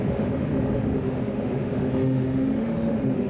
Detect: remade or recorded remade